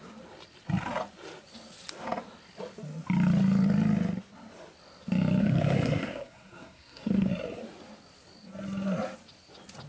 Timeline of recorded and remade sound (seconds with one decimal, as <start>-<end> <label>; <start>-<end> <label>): 0.0-5.4 recorded; 5.4-7.3 remade; 7.3-9.9 recorded